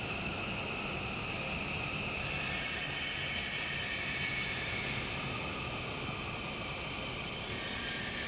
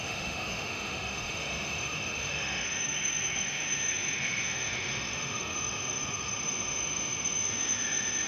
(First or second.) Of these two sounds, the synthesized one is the second